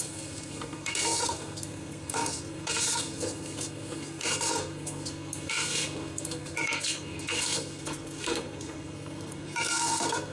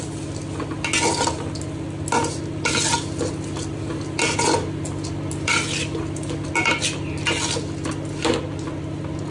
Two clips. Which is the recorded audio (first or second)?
second